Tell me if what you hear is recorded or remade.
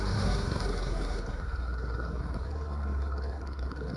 remade